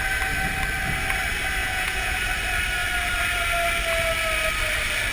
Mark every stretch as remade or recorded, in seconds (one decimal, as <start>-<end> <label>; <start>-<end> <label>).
0.0-1.6 recorded; 1.6-2.2 remade; 2.2-5.1 recorded